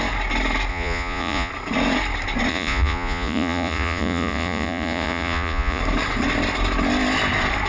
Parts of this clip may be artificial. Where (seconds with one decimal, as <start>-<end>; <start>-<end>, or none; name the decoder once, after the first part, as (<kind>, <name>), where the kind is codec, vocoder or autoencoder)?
0.7-1.5 (vocoder, Vocos); 2.5-5.8